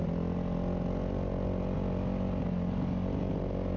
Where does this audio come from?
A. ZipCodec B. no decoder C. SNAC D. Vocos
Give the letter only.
B